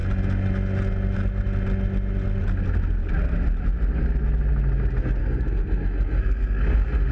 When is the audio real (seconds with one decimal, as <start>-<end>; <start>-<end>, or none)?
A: 0.0-5.2